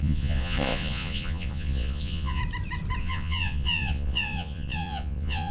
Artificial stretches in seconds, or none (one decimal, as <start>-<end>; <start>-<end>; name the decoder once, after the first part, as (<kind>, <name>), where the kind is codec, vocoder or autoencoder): 0.0-2.4 (vocoder, Vocos); 3.0-5.5